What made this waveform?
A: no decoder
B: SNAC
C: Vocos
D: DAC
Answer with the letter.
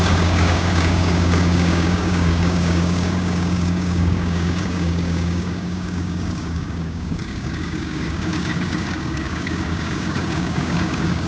D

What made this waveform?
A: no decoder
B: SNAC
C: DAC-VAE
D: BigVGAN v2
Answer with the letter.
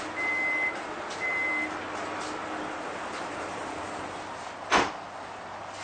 A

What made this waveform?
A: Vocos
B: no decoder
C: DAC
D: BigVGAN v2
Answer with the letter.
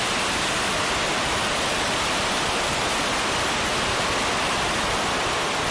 B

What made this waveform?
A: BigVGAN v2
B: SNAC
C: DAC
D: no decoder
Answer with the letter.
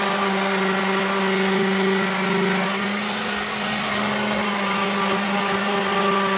D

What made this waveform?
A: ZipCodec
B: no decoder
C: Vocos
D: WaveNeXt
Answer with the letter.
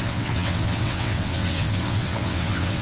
D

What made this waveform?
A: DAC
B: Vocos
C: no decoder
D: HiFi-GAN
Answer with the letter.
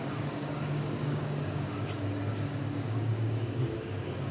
A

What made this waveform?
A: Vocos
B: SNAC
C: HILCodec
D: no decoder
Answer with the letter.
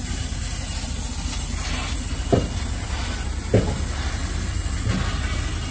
D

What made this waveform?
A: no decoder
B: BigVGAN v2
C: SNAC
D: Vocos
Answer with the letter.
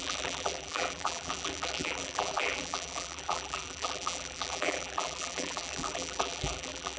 B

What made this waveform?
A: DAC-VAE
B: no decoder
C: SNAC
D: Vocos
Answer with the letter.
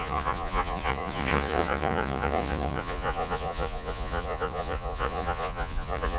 D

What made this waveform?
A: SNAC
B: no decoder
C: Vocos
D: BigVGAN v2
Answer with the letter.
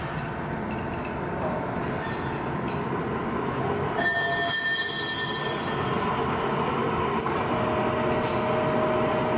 B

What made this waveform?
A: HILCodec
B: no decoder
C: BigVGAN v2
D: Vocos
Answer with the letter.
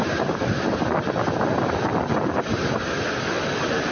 B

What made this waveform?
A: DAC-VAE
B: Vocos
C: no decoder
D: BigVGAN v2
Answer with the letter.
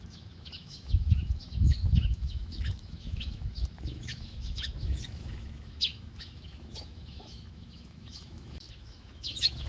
A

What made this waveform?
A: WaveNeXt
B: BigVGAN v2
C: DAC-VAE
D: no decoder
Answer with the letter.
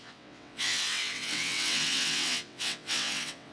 A